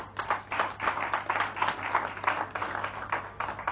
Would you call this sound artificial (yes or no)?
no